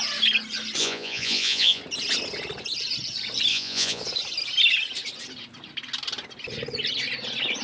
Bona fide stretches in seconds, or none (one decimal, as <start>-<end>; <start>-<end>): 0.0-0.8; 1.8-3.5; 4.0-7.6